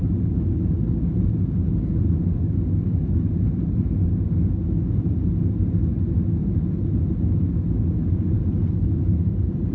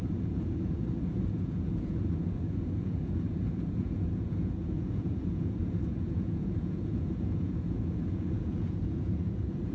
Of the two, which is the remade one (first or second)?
second